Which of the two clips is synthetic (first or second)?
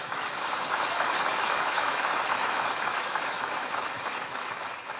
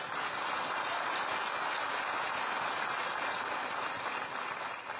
first